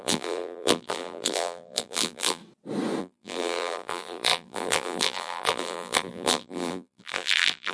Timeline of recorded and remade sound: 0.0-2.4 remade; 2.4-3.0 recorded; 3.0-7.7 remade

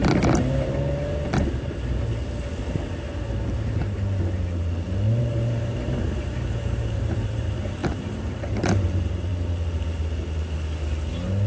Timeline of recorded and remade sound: 0.0-5.2 recorded; 5.2-9.3 remade; 9.3-11.5 recorded

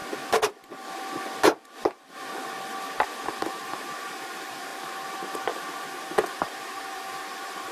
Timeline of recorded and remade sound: 0.0-3.6 recorded; 3.6-4.7 remade; 4.7-6.3 recorded; 6.3-7.7 remade

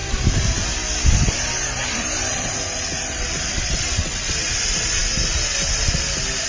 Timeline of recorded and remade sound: 0.0-6.5 recorded